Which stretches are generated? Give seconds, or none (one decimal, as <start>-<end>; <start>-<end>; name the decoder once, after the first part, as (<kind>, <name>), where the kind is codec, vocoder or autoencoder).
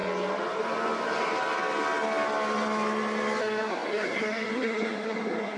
3.4-5.6 (codec, SNAC)